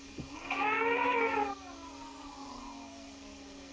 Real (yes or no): no